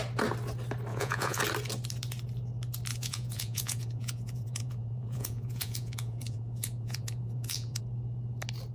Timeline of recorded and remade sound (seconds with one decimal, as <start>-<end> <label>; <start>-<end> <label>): 0.0-0.9 recorded; 0.9-1.4 remade; 1.4-2.9 recorded; 2.9-7.8 remade; 7.8-8.7 recorded